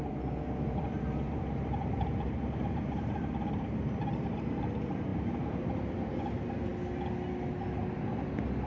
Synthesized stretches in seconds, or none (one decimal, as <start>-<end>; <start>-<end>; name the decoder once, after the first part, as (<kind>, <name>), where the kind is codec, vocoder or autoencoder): 0.0-6.7 (vocoder, BigVGAN v2)